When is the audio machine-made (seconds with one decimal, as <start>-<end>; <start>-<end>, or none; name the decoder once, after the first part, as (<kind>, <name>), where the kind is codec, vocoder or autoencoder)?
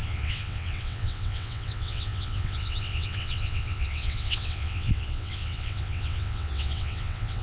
0.0-7.4 (vocoder, WaveNeXt)